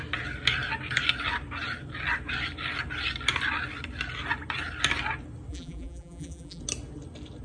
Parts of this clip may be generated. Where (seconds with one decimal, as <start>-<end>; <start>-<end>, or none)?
5.5-6.6